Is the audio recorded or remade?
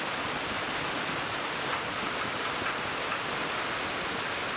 recorded